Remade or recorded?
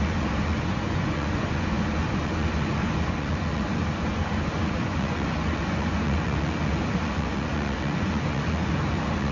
remade